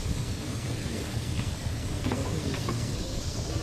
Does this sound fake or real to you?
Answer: fake